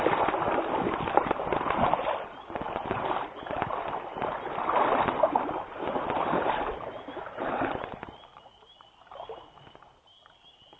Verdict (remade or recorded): recorded